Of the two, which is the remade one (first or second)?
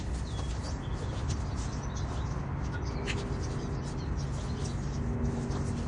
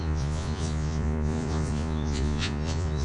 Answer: second